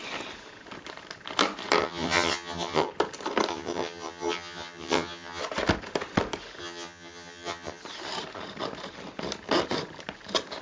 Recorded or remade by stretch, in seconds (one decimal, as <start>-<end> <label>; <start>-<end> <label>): 0.0-1.8 recorded; 1.8-2.9 remade; 2.9-3.5 recorded; 3.5-5.4 remade; 5.4-6.6 recorded; 6.6-7.8 remade; 7.8-10.6 recorded